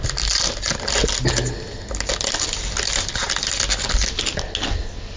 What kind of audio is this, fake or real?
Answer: real